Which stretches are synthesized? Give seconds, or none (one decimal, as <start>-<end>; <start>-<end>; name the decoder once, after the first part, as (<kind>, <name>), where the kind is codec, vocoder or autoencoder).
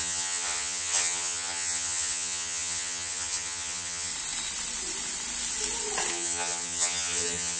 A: 0.0-4.1 (vocoder, HiFi-GAN); 6.1-7.6